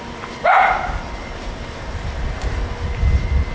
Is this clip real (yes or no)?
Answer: yes